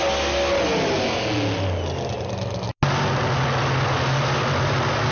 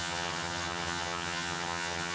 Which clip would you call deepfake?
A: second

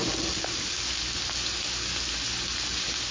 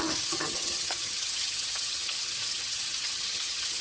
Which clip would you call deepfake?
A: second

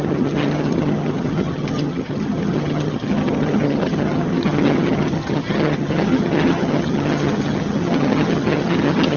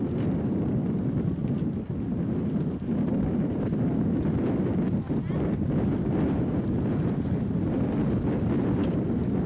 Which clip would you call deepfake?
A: first